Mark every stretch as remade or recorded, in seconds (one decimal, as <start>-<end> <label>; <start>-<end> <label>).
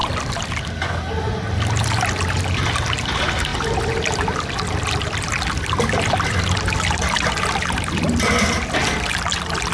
0.0-9.7 recorded